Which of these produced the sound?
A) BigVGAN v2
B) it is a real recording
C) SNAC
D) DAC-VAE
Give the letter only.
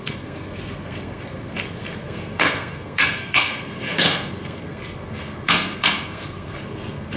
C